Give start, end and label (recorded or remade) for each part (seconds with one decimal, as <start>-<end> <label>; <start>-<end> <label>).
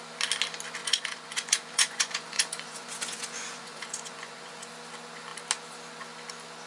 0.0-0.8 recorded; 0.8-4.7 remade; 4.7-6.7 recorded